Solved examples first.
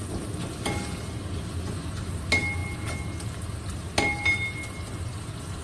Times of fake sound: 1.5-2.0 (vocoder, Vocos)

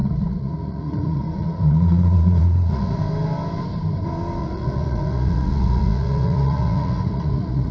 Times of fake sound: 0.0-3.0 (vocoder, Vocos); 4.4-7.7

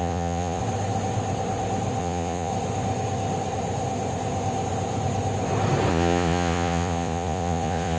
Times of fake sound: 0.0-0.6 (vocoder, Vocos); 2.0-2.5; 5.9-8.0

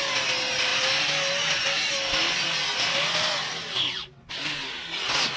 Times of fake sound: none

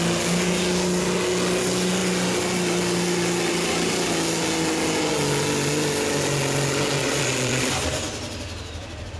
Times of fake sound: 7.0-7.7 (vocoder, Vocos)

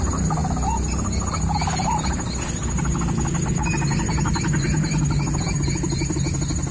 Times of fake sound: none

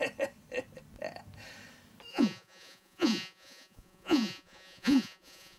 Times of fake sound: 2.1-5.6 (vocoder, Vocos)